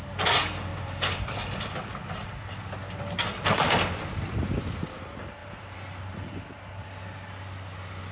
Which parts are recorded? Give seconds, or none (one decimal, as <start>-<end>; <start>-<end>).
0.0-0.7; 1.8-5.4; 6.0-8.1